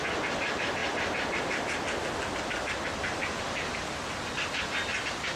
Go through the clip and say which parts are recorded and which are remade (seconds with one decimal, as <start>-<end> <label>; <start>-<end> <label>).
0.0-5.4 recorded